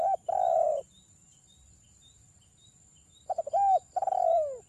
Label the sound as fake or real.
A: real